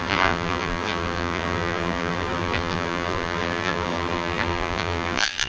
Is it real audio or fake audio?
fake